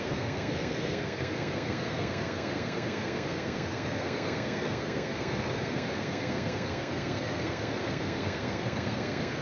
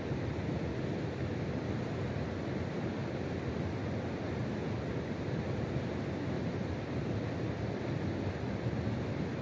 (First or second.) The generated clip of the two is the first